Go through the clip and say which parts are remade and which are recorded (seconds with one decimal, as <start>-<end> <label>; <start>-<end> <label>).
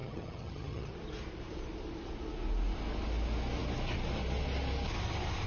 0.0-0.9 remade; 0.9-5.5 recorded